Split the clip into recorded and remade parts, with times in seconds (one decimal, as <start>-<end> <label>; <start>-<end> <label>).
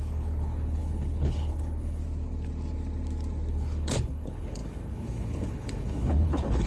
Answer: 0.0-2.0 remade; 2.0-3.5 recorded; 3.5-6.7 remade